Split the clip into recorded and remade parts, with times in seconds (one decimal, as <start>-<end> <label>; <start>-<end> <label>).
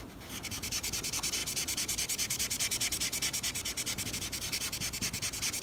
0.0-5.6 recorded